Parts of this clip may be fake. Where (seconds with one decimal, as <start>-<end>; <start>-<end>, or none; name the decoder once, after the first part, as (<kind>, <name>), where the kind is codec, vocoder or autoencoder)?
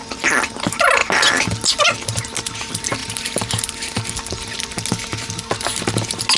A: none